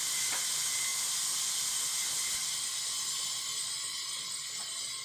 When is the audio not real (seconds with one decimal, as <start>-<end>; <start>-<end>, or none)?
none